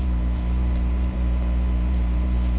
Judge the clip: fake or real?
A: fake